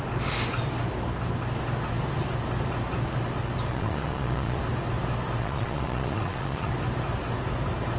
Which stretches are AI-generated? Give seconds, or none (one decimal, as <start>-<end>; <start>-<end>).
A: 3.7-4.6; 5.4-6.7